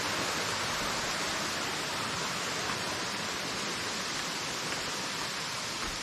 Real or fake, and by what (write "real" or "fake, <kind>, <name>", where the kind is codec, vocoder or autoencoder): real